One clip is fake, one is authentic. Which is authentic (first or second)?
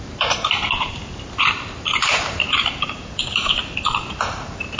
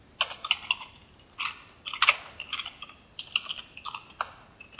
second